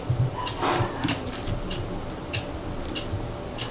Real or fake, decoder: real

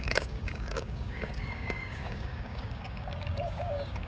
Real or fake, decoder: fake, codec, DAC